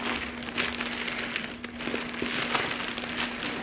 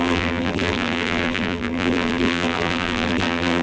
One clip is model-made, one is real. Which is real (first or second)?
first